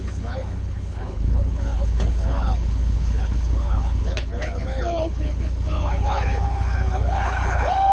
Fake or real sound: fake